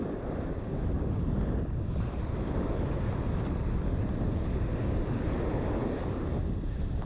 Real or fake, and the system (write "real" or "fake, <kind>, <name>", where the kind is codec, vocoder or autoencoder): real